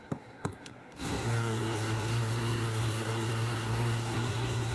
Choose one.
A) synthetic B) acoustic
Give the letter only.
A